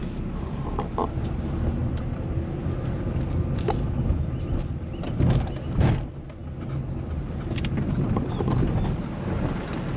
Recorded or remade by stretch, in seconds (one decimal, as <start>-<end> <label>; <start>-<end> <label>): 0.0-1.8 recorded; 1.8-2.5 remade; 2.5-10.0 recorded